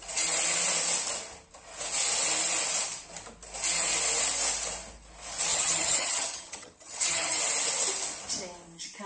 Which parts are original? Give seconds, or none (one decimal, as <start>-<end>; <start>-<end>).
0.0-5.5; 7.4-9.1